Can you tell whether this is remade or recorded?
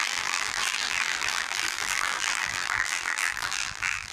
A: remade